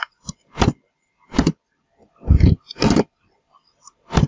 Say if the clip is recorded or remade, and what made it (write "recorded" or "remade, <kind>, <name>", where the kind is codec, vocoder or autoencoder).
recorded